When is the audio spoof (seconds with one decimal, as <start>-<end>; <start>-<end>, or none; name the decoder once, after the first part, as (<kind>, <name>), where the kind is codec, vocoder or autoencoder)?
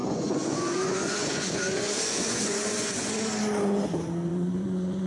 0.0-3.1 (vocoder, Vocos); 4.3-5.1